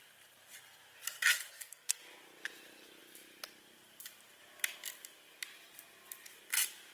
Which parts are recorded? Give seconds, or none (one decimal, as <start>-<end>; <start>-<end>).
0.0-1.5; 2.0-6.9